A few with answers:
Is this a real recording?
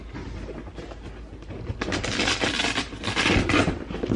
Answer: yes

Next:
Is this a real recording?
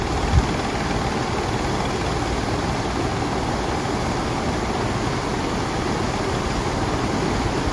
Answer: yes